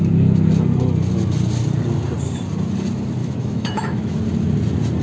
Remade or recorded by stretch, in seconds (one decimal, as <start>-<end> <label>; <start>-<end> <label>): 0.0-3.2 recorded; 3.2-4.2 remade; 4.2-5.0 recorded